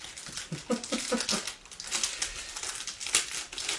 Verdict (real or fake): real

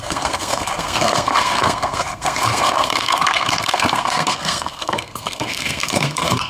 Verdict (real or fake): fake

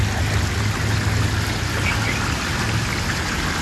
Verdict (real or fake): real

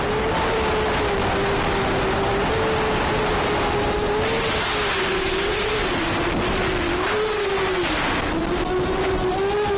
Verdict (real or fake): real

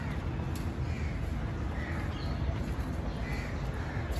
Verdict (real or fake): real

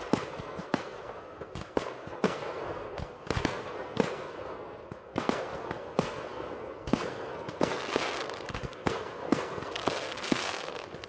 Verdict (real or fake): fake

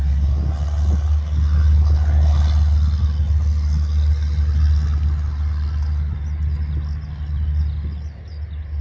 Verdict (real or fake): real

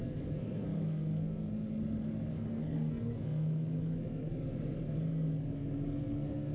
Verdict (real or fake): fake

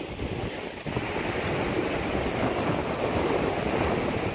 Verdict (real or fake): real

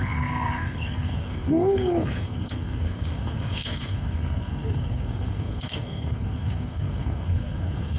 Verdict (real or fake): fake